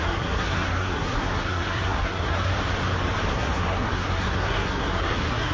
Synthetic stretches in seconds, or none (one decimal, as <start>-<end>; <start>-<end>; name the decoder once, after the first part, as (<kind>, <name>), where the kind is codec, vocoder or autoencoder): 0.0-2.5 (codec, SNAC); 3.3-5.5